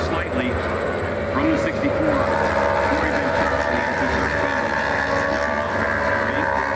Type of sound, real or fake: real